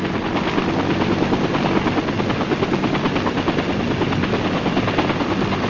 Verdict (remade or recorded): recorded